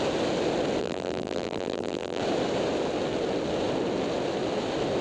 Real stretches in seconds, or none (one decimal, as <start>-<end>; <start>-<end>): 0.0-0.8; 2.2-5.0

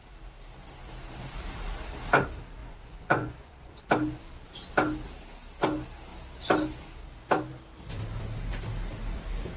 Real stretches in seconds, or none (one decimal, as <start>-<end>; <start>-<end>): 0.0-2.6; 3.8-9.6

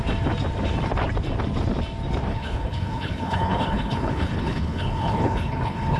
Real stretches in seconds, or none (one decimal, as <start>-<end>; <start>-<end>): 0.0-2.3

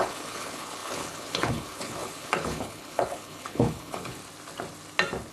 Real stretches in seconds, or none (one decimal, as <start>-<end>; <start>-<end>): 4.2-5.3